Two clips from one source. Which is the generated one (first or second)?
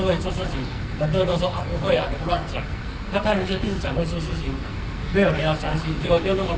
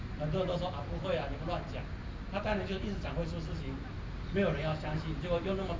first